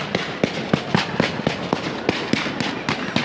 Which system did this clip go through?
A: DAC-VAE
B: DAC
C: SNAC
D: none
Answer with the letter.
D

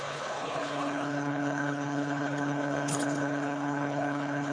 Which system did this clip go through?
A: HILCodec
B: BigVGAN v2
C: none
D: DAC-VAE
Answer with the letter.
A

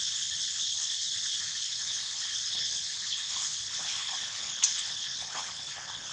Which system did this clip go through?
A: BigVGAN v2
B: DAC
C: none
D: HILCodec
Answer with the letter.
D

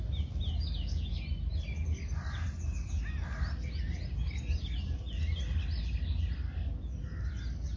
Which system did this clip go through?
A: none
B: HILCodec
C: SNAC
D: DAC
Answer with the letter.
A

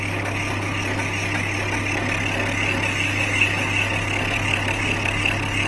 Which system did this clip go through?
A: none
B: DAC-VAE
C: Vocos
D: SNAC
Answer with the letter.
A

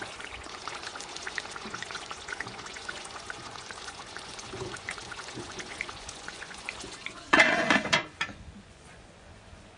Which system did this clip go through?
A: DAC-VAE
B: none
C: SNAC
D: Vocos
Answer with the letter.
D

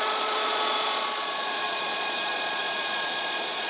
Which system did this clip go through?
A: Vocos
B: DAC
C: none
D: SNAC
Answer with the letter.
A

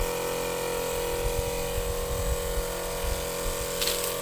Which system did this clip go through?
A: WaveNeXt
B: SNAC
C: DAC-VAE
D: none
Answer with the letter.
D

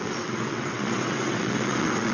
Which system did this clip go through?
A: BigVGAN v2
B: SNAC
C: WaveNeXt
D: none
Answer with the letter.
C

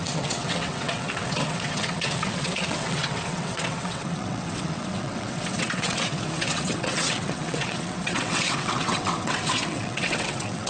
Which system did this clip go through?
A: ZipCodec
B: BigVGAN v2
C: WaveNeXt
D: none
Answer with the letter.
C